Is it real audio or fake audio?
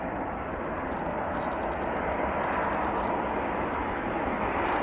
real